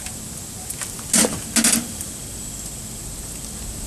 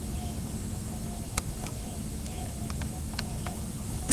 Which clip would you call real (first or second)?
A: first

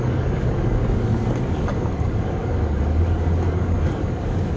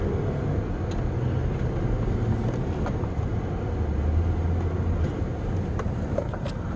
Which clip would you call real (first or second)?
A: second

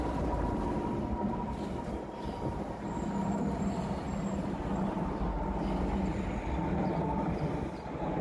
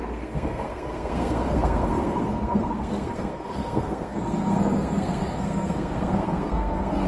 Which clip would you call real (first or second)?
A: first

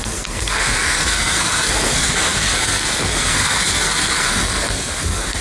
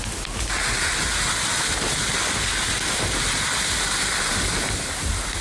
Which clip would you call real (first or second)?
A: second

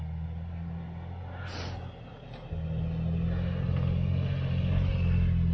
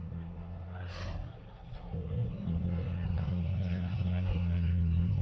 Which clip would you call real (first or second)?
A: first